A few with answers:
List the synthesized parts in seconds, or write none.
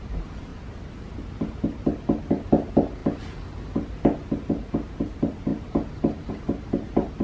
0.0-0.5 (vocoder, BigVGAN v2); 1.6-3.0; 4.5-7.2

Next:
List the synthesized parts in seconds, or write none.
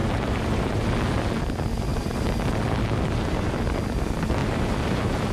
0.0-0.9 (vocoder, BigVGAN v2); 1.9-3.5; 4.4-5.3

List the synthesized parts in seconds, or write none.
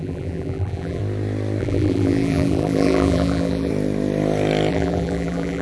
0.0-1.0 (vocoder, BigVGAN v2); 1.6-3.7; 4.7-5.6